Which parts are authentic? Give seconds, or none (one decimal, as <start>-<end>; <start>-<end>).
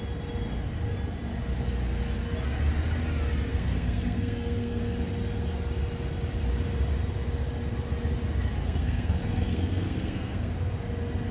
0.0-3.5; 4.8-8.6; 10.5-11.3